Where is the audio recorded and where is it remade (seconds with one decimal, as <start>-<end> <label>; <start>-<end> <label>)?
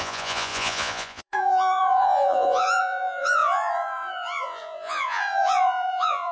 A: 0.0-6.3 remade